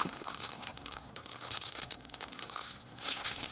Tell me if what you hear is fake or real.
fake